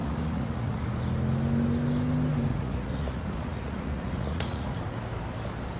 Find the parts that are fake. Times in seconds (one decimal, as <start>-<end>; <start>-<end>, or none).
0.0-0.8; 2.5-4.8